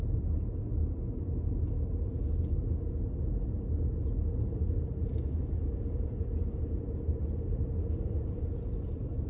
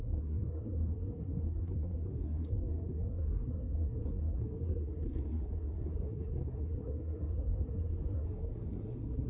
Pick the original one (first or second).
first